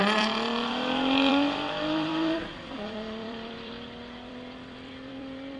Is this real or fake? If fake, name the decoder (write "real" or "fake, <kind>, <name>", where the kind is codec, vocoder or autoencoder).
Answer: fake, vocoder, BigVGAN v2